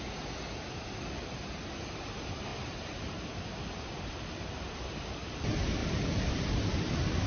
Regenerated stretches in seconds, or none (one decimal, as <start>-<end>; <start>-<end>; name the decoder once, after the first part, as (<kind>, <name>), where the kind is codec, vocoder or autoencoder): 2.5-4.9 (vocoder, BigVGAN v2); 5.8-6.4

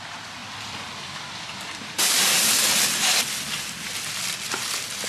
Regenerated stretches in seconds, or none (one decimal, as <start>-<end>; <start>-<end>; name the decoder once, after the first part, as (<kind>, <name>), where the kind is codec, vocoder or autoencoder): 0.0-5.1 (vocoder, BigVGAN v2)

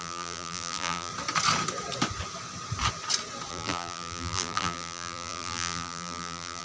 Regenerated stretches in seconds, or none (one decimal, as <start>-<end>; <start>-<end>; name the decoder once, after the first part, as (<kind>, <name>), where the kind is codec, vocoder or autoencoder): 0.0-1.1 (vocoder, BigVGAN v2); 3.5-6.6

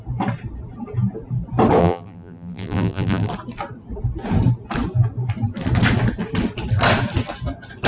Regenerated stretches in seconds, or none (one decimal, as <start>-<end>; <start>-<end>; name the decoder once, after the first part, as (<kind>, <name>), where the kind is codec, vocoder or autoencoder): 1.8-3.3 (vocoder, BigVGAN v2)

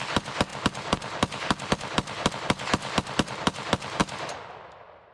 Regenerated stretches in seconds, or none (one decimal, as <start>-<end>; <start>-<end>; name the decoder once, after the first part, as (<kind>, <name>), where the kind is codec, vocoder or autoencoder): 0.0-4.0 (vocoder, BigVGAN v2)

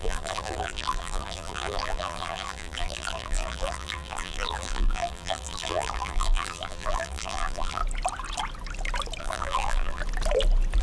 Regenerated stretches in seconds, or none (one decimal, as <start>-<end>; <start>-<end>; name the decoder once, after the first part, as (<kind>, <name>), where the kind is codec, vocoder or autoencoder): 0.0-7.8 (vocoder, BigVGAN v2); 9.2-10.0

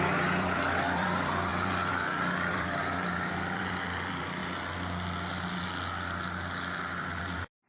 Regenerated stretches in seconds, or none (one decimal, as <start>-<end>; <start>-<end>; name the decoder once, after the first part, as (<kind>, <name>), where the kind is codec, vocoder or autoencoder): 0.0-4.4 (vocoder, BigVGAN v2); 7.2-7.7